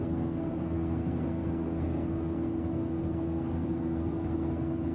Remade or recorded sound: remade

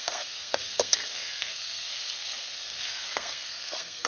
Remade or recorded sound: remade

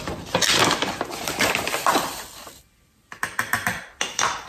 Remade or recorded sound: remade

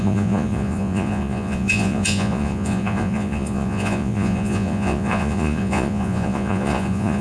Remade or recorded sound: remade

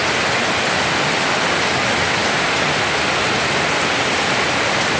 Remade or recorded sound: recorded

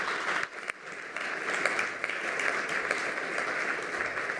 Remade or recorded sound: recorded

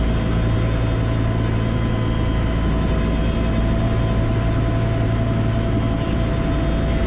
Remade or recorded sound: recorded